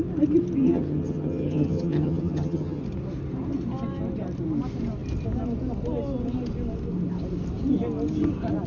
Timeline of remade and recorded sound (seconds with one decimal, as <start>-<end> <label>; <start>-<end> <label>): 0.0-0.6 recorded; 0.6-2.8 remade; 2.8-8.7 recorded